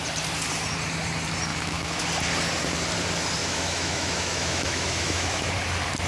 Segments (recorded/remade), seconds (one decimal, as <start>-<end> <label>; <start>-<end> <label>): 0.0-1.5 recorded; 1.5-2.0 remade; 2.0-3.4 recorded; 3.4-5.5 remade; 5.5-6.1 recorded